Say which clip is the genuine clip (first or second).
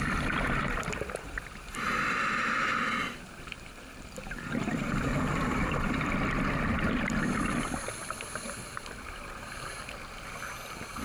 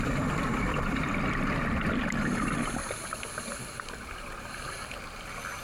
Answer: second